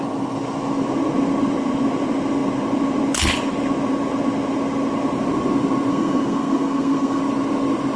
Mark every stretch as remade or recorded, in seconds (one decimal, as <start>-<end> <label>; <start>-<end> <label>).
0.0-5.9 recorded; 5.9-7.2 remade; 7.2-8.0 recorded